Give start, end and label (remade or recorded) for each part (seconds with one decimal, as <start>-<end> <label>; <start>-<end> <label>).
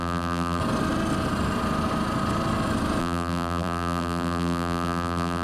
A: 0.0-0.6 remade; 0.6-3.0 recorded; 3.0-5.4 remade